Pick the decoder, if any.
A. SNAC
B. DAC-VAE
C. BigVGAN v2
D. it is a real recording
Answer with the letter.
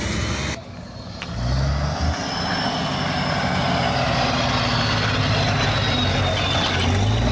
D